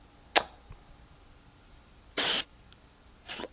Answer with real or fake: real